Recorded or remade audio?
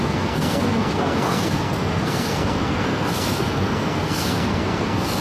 remade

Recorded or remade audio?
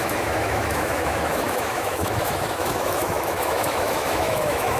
remade